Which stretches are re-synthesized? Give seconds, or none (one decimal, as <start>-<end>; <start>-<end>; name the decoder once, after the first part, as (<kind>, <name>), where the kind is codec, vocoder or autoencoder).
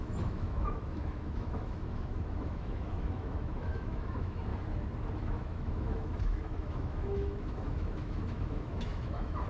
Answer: 0.0-4.5 (autoencoder, DAC-VAE); 5.1-9.5